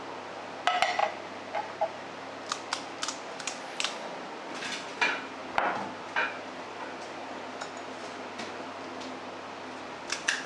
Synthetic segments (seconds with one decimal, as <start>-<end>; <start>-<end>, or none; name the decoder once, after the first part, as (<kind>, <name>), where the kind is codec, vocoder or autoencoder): none